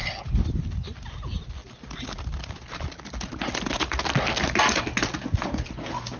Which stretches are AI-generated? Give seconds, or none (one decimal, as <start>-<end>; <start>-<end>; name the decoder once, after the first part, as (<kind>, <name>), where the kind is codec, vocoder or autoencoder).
none